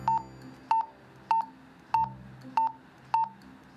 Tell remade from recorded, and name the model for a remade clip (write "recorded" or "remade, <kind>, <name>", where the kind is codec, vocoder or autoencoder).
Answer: recorded